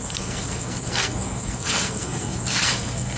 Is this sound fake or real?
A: fake